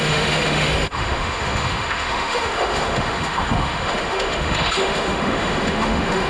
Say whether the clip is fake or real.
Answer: fake